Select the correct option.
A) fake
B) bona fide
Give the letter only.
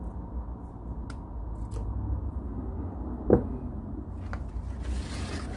B